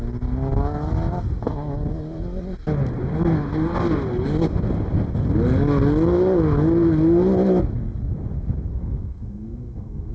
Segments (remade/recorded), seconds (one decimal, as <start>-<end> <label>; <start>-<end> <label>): 0.0-8.7 recorded; 8.7-10.1 remade